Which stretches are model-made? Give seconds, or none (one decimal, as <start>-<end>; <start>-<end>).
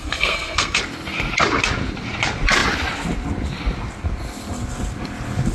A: 0.0-0.8